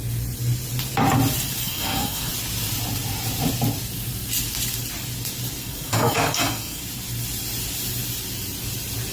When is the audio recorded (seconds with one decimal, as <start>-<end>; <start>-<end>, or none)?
0.0-1.6; 2.3-5.6; 6.8-9.1

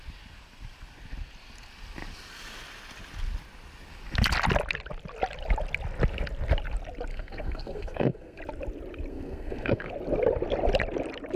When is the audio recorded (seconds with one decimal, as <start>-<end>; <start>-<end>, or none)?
0.0-7.1; 8.4-9.1; 9.9-11.4

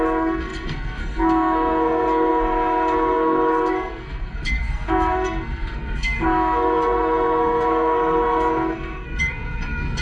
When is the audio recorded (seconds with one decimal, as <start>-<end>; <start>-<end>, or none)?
none

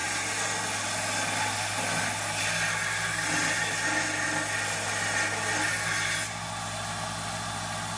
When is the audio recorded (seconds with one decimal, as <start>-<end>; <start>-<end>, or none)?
0.0-8.0